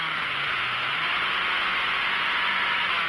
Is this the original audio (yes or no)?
no